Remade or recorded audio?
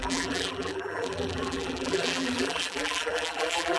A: remade